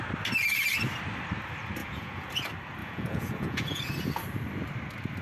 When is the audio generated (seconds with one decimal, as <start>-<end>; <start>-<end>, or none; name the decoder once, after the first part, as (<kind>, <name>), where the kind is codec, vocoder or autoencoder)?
1.8-2.3 (vocoder, Vocos); 2.8-3.8